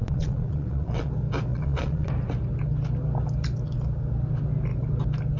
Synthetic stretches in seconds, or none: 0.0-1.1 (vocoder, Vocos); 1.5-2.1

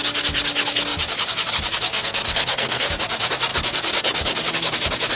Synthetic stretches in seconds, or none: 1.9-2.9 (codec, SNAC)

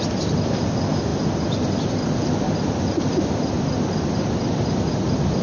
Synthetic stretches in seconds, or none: none

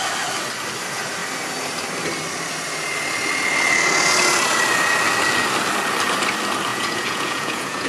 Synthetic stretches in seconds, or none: 6.7-7.9 (vocoder, Vocos)